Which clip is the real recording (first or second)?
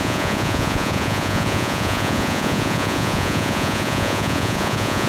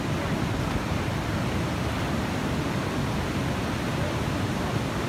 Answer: second